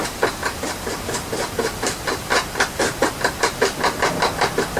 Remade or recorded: recorded